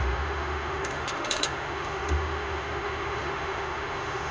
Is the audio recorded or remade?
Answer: remade